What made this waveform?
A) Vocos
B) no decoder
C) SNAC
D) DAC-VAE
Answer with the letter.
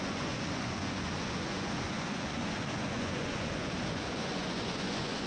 A